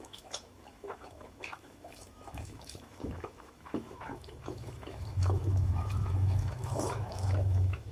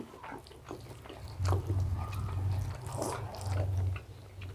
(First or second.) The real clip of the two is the second